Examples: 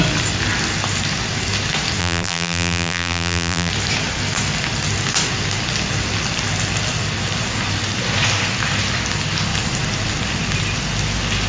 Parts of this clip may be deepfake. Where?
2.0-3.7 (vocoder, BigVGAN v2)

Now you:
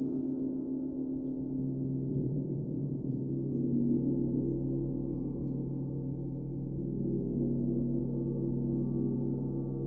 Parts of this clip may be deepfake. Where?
2.1-3.2 (vocoder, Vocos)

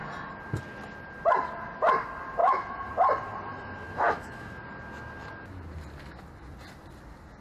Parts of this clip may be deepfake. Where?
2.4-2.9 (autoencoder, DAC-VAE); 3.5-4.6